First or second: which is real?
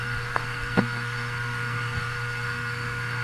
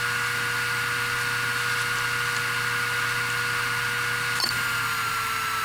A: second